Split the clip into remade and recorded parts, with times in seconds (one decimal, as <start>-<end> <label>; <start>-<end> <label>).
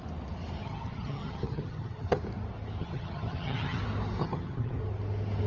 0.0-0.6 recorded; 0.6-2.2 remade; 2.2-2.8 recorded; 2.8-3.8 remade; 3.8-4.2 recorded; 4.2-4.8 remade; 4.8-5.5 recorded